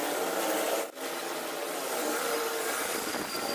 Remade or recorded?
recorded